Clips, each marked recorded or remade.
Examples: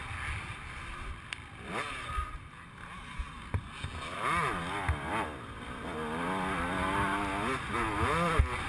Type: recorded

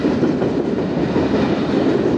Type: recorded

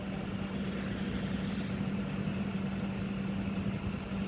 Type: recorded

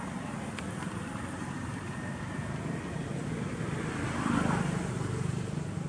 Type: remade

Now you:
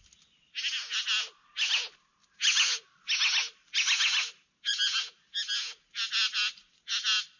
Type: recorded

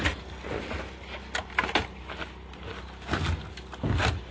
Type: recorded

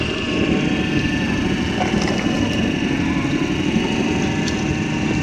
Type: recorded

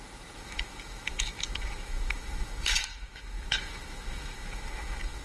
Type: remade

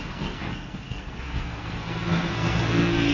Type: remade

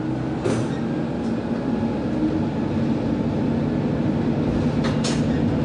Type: recorded